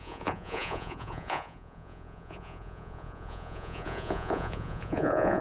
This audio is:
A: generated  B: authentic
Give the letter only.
A